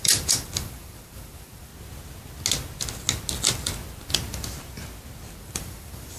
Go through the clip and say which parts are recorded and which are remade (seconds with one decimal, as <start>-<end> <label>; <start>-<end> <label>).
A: 0.0-1.7 remade; 1.7-5.4 recorded; 5.4-6.2 remade